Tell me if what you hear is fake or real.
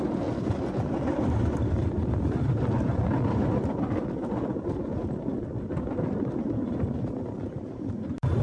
real